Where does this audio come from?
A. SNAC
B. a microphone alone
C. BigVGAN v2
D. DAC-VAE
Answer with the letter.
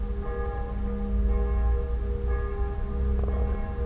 B